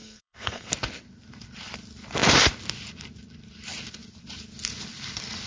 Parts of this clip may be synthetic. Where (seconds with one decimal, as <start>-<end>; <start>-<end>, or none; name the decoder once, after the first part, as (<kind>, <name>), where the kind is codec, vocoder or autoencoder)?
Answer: 0.0-0.7 (codec, SNAC)